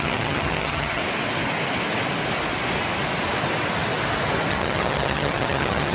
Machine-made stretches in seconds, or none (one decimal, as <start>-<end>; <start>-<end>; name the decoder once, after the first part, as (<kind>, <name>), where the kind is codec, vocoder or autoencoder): 0.0-1.0 (vocoder, HiFi-GAN); 4.5-5.9

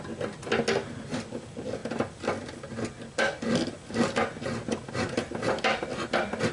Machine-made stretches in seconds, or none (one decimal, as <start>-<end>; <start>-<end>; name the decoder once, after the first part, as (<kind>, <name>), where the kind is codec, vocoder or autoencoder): none

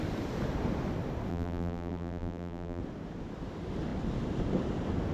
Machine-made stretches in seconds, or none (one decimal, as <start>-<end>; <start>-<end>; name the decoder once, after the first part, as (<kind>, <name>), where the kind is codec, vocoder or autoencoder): 1.3-2.8 (vocoder, BigVGAN v2)